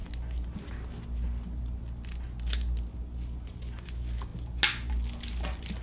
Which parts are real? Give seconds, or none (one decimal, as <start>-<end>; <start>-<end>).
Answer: 0.0-5.8